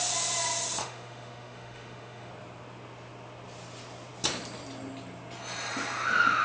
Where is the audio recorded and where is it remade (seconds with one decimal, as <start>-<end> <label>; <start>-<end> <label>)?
0.0-0.8 recorded; 0.8-2.3 remade; 2.3-6.4 recorded

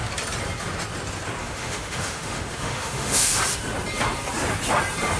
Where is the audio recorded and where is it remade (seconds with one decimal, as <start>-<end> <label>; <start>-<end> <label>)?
0.0-1.4 recorded; 1.4-3.4 remade; 3.4-5.2 recorded

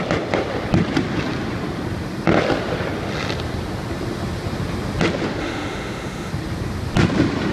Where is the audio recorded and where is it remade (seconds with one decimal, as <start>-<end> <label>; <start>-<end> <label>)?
0.0-5.4 recorded; 5.4-6.3 remade; 6.3-7.5 recorded

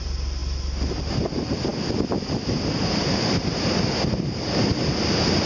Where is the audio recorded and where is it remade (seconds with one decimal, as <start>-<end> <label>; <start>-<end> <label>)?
0.0-5.5 recorded